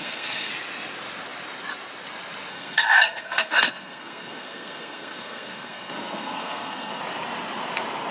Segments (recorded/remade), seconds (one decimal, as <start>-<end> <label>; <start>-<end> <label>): 0.0-0.5 remade; 0.5-2.5 recorded; 2.5-7.0 remade; 7.0-8.1 recorded

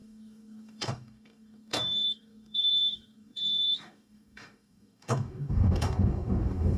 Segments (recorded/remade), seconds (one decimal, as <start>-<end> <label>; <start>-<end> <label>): 0.0-6.8 remade

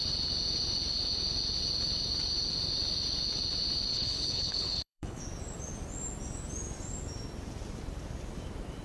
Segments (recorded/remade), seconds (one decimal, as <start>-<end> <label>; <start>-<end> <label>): 0.0-3.9 recorded; 3.9-5.2 remade; 5.2-8.8 recorded

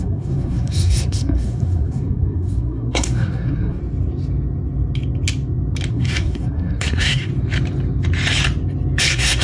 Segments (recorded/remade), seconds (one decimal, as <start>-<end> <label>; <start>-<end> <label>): 0.0-3.8 remade; 3.8-5.9 recorded; 5.9-7.3 remade; 7.3-9.0 recorded; 9.0-9.4 remade

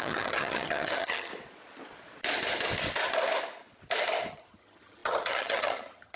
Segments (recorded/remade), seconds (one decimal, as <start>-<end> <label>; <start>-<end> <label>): 0.0-1.3 remade; 1.3-4.3 recorded; 4.3-6.2 remade

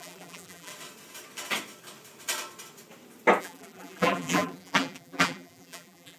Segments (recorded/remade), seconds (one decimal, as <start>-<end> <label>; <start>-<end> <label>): 0.0-0.7 remade; 0.7-3.4 recorded; 3.4-6.2 remade